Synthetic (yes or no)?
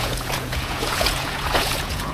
yes